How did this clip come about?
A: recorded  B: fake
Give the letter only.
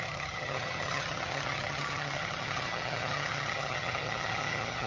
B